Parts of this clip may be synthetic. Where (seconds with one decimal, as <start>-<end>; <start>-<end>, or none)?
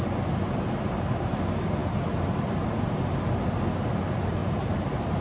4.4-5.2